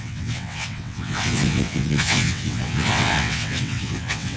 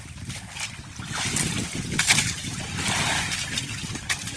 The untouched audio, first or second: second